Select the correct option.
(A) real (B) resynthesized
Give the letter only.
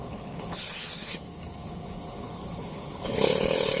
B